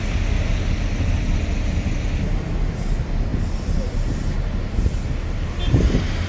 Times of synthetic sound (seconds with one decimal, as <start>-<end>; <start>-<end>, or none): none

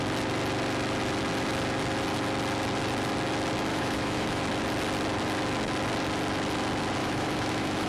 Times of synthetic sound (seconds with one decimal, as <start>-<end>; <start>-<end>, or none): 3.7-4.4; 7.0-7.9

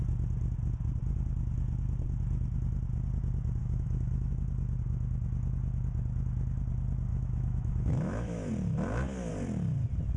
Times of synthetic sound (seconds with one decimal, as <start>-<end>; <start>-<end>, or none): 3.6-4.3; 7.1-8.5

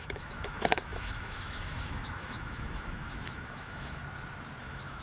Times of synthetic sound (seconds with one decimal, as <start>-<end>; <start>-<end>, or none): 0.0-4.0; 4.6-5.0

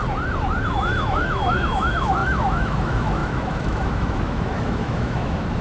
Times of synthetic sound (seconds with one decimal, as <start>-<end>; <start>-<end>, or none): 0.7-5.6

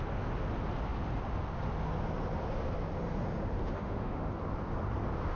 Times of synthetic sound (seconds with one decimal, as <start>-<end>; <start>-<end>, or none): 3.6-4.3